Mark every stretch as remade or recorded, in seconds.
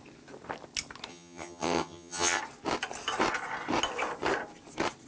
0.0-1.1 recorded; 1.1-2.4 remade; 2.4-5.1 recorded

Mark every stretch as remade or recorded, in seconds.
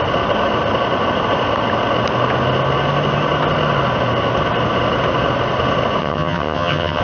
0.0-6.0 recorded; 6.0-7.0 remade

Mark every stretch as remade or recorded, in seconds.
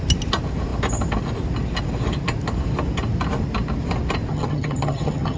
0.0-4.3 recorded; 4.3-5.4 remade